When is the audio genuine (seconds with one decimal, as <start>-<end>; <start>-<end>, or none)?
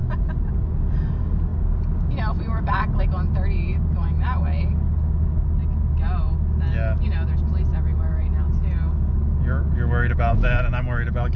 0.0-11.4